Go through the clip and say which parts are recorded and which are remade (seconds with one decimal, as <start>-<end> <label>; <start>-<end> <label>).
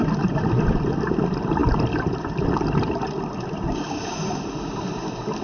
0.0-5.4 recorded